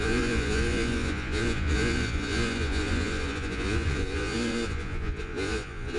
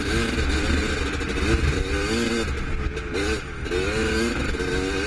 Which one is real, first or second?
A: second